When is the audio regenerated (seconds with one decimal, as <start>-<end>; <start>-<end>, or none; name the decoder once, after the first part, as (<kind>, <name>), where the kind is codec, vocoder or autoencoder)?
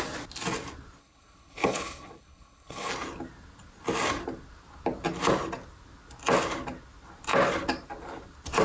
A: 1.0-2.9 (codec, HILCodec)